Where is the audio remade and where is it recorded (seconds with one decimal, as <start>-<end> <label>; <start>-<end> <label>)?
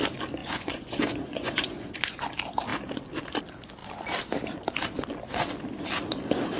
0.0-0.4 recorded; 0.4-2.2 remade; 2.2-6.6 recorded